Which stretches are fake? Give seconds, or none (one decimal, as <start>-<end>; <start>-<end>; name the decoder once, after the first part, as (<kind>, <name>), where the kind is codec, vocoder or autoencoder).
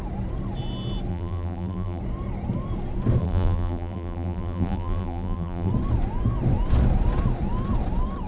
1.1-2.0 (vocoder, BigVGAN v2); 3.2-5.7